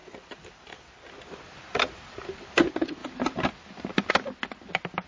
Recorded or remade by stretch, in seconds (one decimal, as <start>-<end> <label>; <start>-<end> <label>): 0.0-2.2 remade; 2.2-3.0 recorded; 3.0-4.1 remade; 4.1-5.1 recorded